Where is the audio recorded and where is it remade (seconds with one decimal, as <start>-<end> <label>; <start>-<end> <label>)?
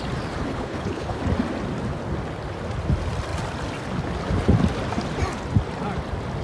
0.0-0.5 recorded; 0.5-1.2 remade; 1.2-6.4 recorded